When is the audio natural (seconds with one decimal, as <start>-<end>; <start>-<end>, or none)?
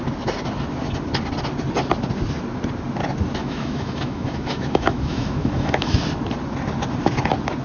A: 0.0-3.4; 6.0-7.6